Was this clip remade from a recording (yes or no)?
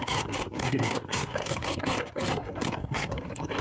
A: yes